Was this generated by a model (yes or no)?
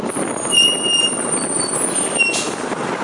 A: no